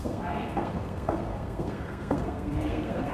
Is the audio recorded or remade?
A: remade